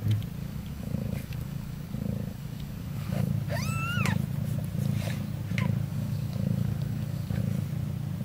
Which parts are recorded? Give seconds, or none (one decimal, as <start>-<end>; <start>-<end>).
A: 0.0-0.4; 3.3-5.9; 7.4-8.2